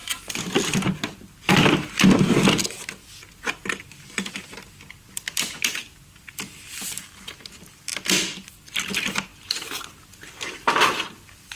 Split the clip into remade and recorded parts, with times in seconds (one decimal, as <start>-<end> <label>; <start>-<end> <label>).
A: 0.0-3.7 recorded; 3.7-7.9 remade; 7.9-8.9 recorded; 8.9-11.6 remade